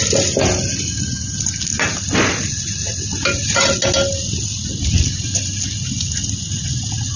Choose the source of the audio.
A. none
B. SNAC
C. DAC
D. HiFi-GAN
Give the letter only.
A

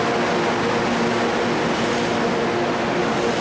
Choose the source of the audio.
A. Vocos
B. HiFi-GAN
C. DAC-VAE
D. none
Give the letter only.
D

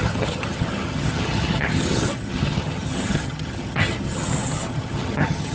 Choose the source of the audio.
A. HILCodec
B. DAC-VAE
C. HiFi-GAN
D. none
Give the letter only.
C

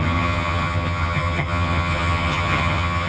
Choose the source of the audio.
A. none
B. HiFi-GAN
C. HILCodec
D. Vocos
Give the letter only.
B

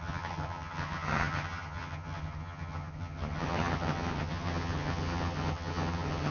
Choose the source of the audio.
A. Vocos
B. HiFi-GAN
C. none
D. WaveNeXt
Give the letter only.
B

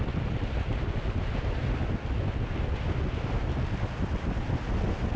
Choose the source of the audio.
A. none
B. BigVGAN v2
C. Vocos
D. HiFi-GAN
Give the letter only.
A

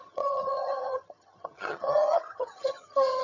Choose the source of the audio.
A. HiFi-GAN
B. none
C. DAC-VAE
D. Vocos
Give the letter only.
A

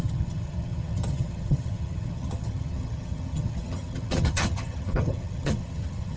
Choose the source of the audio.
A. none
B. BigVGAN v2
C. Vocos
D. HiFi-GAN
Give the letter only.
D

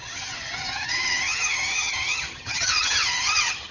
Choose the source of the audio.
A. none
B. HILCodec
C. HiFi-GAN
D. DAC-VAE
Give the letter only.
C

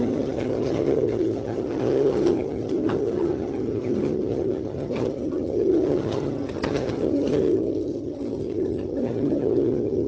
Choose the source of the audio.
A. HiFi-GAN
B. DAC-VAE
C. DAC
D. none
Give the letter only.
A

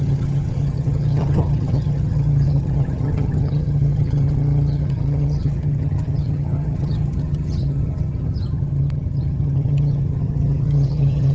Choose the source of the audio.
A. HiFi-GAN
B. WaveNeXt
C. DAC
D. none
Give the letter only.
A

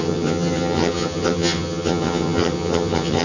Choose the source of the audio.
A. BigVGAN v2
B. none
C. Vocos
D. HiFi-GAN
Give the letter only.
D